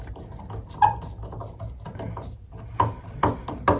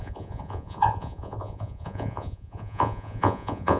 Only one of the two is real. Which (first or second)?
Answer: first